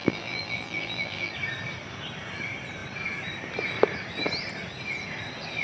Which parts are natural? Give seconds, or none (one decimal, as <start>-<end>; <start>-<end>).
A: 1.3-5.6

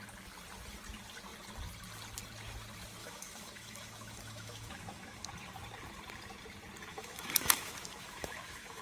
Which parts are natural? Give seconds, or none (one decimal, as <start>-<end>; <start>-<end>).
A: 0.0-3.0; 5.3-6.9

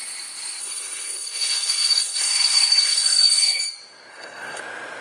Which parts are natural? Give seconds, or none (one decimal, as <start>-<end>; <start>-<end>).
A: 0.0-0.6; 3.6-4.1; 4.6-5.0